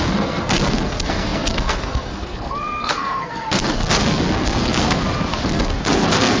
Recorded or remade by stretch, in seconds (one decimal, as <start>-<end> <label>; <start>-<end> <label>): 0.0-5.0 remade; 5.0-5.5 recorded; 5.5-6.4 remade